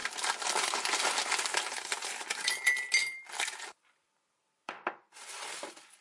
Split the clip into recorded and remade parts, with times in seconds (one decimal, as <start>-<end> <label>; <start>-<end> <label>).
0.0-0.7 remade; 0.7-3.0 recorded; 3.0-4.9 remade; 4.9-6.0 recorded